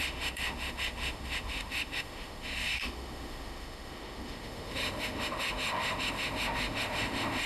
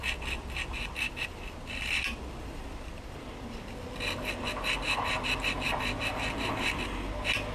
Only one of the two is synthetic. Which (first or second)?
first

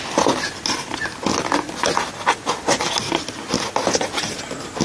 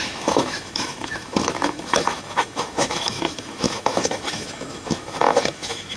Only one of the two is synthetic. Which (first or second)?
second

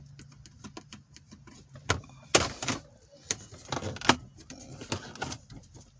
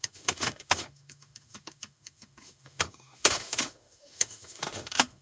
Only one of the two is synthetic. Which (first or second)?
second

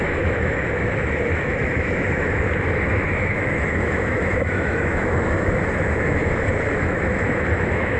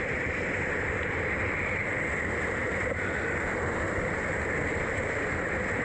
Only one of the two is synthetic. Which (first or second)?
first